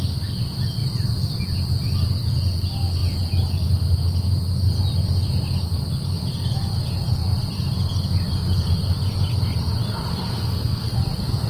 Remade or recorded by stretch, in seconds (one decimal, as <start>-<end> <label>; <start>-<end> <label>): 0.0-10.1 recorded; 10.1-11.0 remade; 11.0-11.5 recorded